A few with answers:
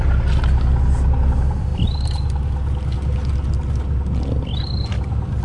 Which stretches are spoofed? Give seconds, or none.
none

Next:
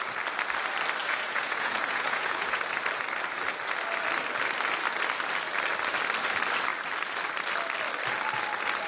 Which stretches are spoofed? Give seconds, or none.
1.0-2.6 (vocoder, Vocos)

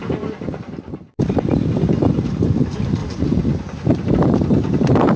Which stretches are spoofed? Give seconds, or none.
0.0-1.5 (vocoder, BigVGAN v2); 2.1-3.0; 4.1-5.2